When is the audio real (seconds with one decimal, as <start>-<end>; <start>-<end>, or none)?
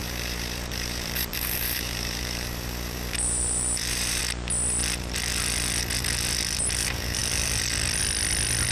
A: 4.2-8.7